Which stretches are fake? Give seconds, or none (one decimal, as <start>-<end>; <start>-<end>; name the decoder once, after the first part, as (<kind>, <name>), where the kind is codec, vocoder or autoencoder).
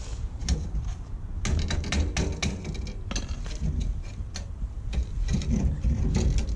none